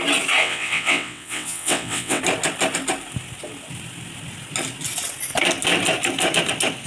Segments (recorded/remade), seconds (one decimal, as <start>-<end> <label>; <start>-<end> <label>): 0.0-0.4 recorded; 0.4-2.2 remade; 2.2-6.9 recorded